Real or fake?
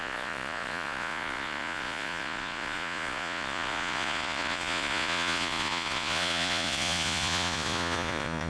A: fake